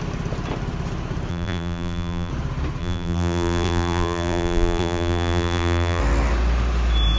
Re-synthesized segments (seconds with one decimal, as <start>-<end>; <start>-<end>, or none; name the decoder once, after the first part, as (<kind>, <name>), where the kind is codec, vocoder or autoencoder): 1.3-2.3 (vocoder, BigVGAN v2); 2.8-6.0